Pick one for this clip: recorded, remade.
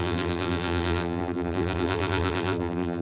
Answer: remade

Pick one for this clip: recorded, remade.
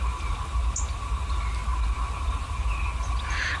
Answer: recorded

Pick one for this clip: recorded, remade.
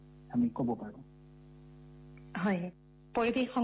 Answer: recorded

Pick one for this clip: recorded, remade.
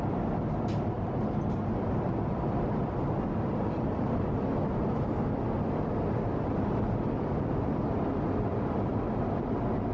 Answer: recorded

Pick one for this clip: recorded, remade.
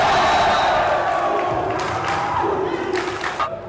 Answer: recorded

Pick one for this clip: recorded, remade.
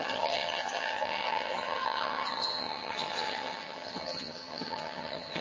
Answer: remade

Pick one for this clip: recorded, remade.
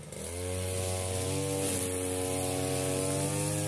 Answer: recorded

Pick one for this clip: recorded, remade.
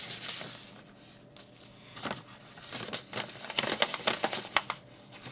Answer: recorded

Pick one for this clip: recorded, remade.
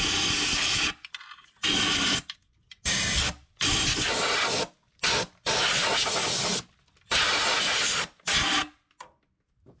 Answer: recorded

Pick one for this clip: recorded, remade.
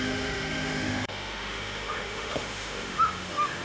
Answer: remade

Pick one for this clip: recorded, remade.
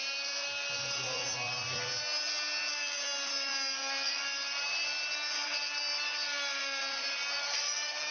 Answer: recorded